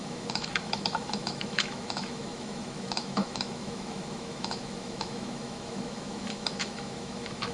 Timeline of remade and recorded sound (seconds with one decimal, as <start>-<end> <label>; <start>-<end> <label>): 0.0-7.5 remade